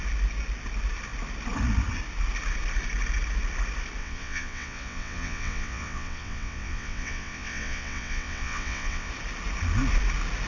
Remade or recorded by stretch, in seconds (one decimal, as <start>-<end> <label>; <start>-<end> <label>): 0.0-4.0 recorded; 4.0-9.1 remade; 9.1-10.5 recorded